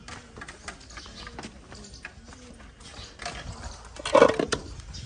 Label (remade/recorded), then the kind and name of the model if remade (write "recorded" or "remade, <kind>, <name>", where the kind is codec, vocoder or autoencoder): recorded